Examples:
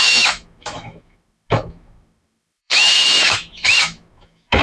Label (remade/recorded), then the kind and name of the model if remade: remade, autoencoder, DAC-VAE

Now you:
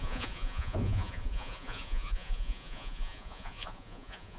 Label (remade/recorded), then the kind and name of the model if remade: remade, vocoder, Vocos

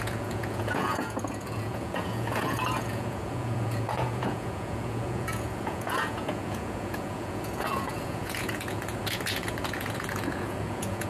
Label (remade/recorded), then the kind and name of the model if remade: remade, vocoder, Vocos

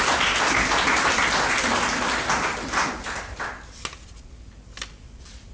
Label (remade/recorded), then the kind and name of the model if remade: recorded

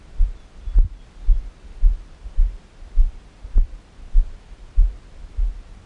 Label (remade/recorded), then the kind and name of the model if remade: recorded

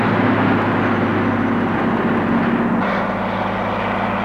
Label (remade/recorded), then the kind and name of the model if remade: recorded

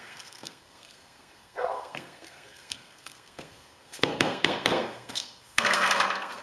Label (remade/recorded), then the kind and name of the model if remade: remade, codec, SNAC